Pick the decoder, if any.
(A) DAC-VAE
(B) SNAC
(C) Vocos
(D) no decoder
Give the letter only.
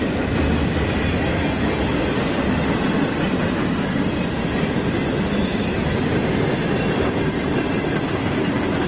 D